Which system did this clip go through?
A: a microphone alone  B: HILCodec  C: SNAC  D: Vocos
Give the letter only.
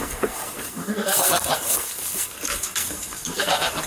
C